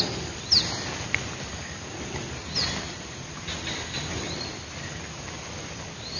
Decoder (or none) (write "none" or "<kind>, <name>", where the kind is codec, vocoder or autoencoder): none